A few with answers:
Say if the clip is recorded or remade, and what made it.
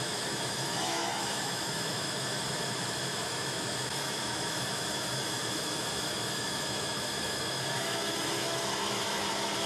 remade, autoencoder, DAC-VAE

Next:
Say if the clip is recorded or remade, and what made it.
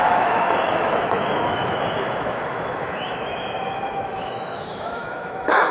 remade, autoencoder, DAC-VAE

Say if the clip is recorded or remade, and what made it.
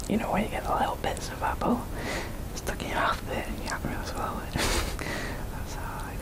recorded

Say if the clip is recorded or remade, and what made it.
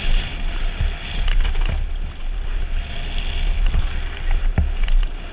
recorded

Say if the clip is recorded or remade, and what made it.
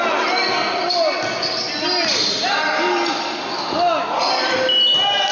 recorded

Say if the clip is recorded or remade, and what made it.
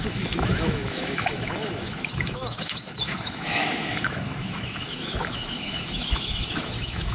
remade, autoencoder, DAC-VAE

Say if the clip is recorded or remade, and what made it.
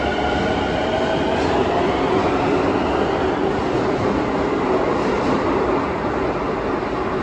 recorded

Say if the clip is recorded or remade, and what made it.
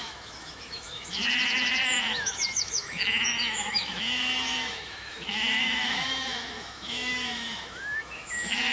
remade, autoencoder, DAC-VAE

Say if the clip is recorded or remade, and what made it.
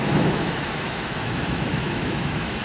remade, autoencoder, DAC-VAE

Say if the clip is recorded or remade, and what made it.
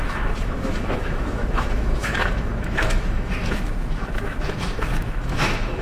remade, autoencoder, DAC-VAE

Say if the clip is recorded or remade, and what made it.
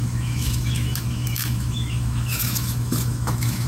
remade, autoencoder, DAC-VAE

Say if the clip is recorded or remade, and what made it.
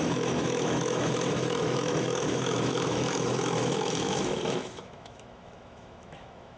remade, autoencoder, DAC-VAE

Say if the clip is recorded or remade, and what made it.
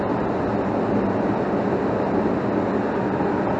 recorded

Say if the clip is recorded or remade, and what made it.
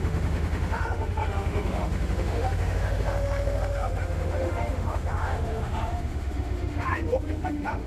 remade, autoencoder, DAC-VAE